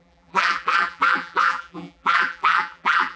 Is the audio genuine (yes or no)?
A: no